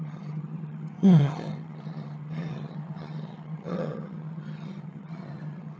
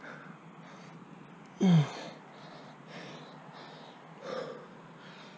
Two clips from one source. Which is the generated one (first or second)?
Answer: first